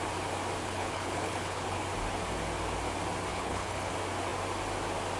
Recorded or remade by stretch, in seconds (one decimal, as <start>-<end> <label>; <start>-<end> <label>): 0.0-0.6 recorded; 0.6-1.8 remade; 1.8-3.3 recorded; 3.3-3.9 remade; 3.9-5.2 recorded